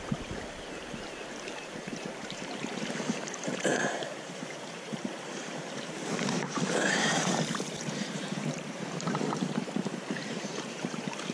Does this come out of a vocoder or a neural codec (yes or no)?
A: yes